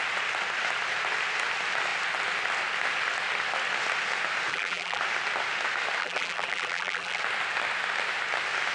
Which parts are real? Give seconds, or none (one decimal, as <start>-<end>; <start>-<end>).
0.0-4.5; 5.0-6.0; 7.2-8.7